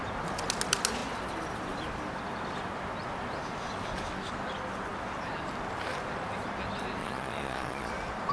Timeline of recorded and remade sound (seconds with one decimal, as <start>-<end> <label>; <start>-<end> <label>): 0.0-7.0 recorded; 7.0-7.9 remade; 7.9-8.3 recorded